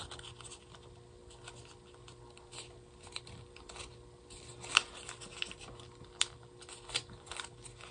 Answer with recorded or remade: recorded